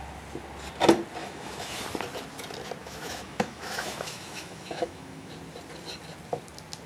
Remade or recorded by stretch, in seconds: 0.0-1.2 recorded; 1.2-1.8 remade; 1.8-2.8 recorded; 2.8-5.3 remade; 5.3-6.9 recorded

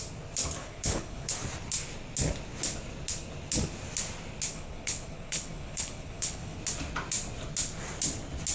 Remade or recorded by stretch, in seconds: 0.0-0.6 recorded; 0.6-1.3 remade; 1.3-4.5 recorded; 4.5-6.6 remade; 6.6-8.5 recorded

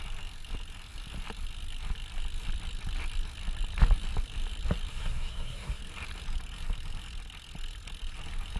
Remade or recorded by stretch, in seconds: 0.0-4.9 recorded; 4.9-5.8 remade; 5.8-8.6 recorded

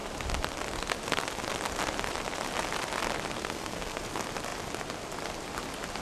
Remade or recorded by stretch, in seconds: 0.0-3.4 recorded; 3.4-4.0 remade; 4.0-6.0 recorded

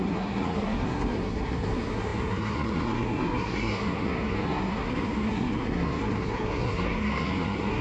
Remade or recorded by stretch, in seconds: 0.0-7.8 remade

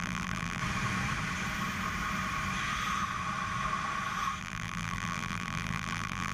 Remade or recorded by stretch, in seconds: 0.0-0.6 remade; 0.6-4.4 recorded; 4.4-6.3 remade

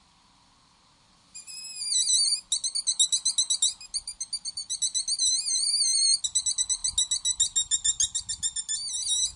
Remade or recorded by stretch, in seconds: 0.0-9.4 recorded

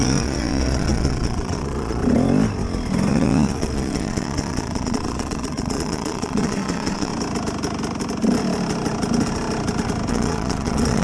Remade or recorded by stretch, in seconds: 0.0-2.0 remade; 2.0-3.1 recorded; 3.1-7.1 remade; 7.1-10.1 recorded; 10.1-11.0 remade